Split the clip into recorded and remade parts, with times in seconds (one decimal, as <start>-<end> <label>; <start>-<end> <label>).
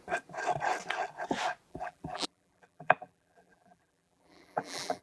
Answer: 0.0-1.7 recorded; 1.7-5.0 remade